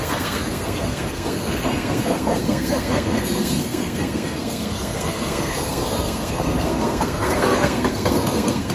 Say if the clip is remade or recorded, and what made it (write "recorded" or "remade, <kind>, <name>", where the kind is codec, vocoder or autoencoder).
remade, codec, SNAC